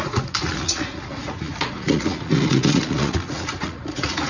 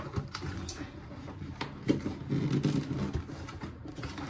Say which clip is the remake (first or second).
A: first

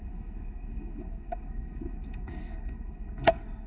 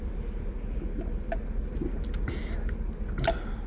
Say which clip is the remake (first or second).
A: first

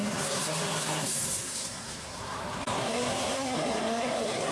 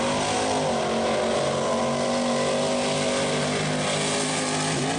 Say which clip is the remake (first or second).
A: first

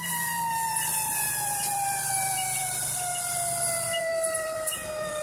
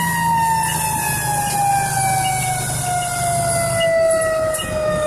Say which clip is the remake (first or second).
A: first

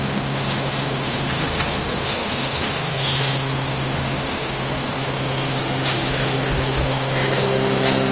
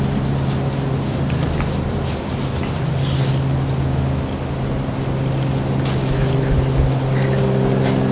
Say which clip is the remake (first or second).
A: first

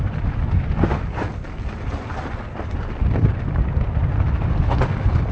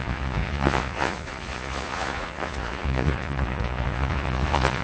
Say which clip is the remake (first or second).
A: second